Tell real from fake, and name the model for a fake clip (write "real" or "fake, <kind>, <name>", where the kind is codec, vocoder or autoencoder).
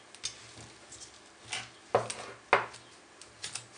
real